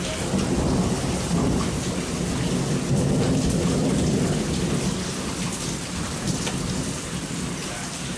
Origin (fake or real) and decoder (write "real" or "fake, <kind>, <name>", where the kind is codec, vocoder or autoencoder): real